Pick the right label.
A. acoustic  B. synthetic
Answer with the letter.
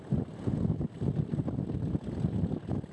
A